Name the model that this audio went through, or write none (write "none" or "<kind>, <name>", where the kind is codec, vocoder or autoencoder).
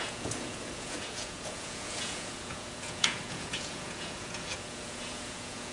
vocoder, Vocos